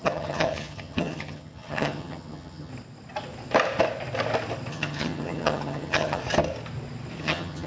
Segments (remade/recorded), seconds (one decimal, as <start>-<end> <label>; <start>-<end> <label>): 0.0-2.7 remade; 2.7-4.7 recorded; 4.7-6.2 remade; 6.2-7.2 recorded; 7.2-7.7 remade